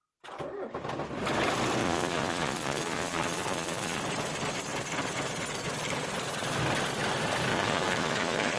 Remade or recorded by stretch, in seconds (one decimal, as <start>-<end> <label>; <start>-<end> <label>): 0.0-1.8 recorded; 1.8-4.0 remade; 4.0-7.5 recorded; 7.5-8.6 remade